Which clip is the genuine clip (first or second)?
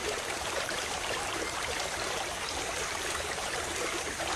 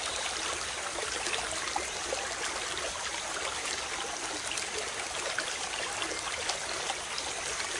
second